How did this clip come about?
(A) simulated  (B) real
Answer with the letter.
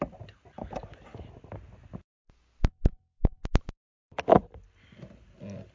B